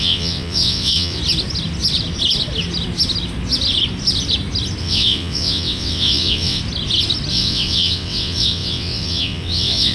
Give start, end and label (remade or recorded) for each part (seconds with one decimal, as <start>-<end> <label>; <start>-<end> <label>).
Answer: 0.0-1.2 remade; 1.2-4.8 recorded; 4.8-6.6 remade; 6.6-7.3 recorded; 7.3-9.9 remade